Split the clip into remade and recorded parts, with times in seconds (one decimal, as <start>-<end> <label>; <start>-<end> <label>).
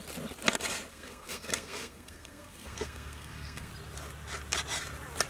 0.0-0.9 recorded; 0.9-3.7 remade; 3.7-5.3 recorded